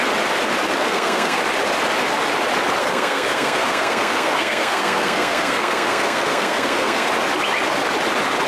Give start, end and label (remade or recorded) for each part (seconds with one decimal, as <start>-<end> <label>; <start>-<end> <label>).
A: 0.0-0.8 recorded; 0.8-1.4 remade; 1.4-2.8 recorded; 2.8-7.1 remade; 7.1-8.5 recorded